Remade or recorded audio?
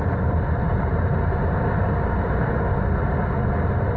recorded